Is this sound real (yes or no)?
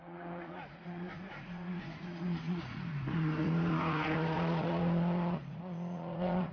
no